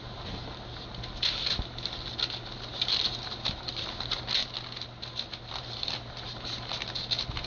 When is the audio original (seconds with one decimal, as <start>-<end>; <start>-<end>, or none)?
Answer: 0.0-7.5